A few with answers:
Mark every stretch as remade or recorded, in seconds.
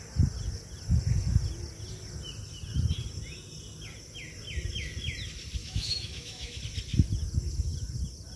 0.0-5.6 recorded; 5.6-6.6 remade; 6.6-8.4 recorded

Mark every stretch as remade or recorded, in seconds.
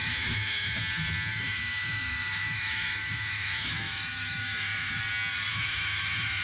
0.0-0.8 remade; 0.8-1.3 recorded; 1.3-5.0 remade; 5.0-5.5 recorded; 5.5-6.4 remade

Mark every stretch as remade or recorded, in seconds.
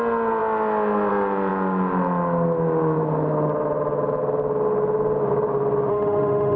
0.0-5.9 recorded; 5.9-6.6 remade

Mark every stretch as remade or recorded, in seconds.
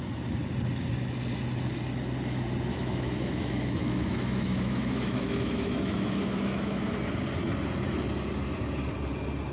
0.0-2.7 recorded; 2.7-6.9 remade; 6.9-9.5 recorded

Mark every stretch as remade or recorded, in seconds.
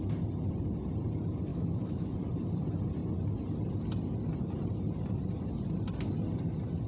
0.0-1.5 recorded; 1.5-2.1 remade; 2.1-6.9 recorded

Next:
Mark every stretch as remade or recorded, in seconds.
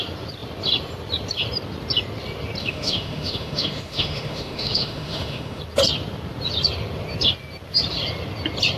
0.0-2.6 recorded; 2.6-5.6 remade; 5.6-8.8 recorded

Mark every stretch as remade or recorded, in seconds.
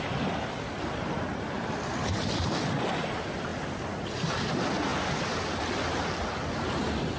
0.0-7.2 recorded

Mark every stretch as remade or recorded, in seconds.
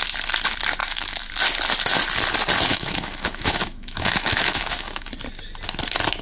0.0-0.8 recorded; 0.8-1.3 remade; 1.3-2.7 recorded; 2.7-5.1 remade; 5.1-6.2 recorded